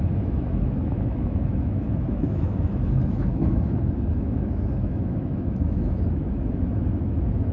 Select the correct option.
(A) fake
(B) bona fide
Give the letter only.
A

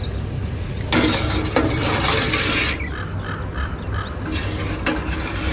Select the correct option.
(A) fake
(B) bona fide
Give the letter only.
B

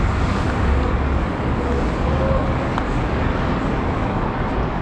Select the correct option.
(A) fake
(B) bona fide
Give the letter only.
A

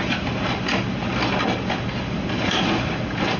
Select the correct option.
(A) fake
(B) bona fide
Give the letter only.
B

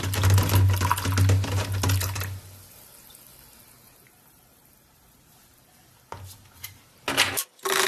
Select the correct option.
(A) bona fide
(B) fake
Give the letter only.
A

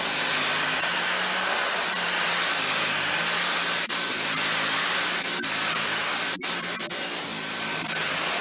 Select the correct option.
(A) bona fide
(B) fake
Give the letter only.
A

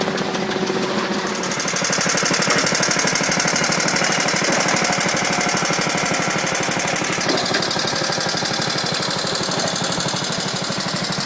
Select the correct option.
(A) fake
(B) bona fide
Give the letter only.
B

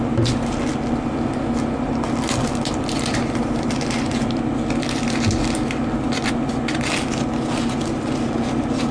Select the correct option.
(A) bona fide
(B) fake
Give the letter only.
A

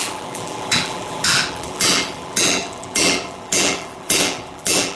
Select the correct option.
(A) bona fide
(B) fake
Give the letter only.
B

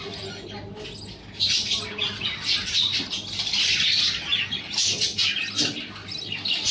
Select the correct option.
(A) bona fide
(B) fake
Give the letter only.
A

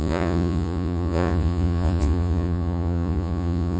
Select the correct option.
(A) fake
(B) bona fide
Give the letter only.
A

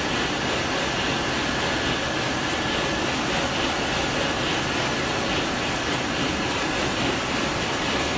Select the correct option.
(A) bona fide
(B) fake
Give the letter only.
A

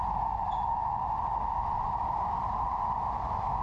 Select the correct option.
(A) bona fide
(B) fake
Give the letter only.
A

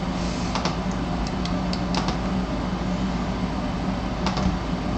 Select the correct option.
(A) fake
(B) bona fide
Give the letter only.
B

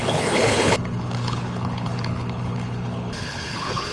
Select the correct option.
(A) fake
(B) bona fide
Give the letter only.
A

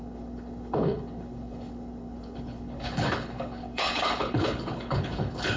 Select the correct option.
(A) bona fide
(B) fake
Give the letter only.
B